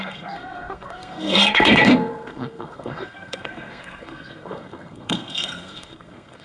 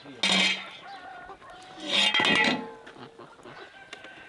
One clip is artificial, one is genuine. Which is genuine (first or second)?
second